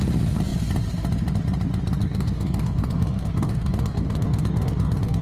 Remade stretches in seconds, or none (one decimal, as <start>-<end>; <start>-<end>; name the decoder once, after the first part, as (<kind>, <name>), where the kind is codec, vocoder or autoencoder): 2.0-5.2 (codec, DAC)